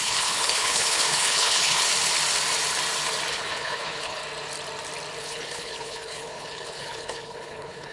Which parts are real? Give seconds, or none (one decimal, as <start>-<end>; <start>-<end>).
1.9-3.3; 4.2-5.2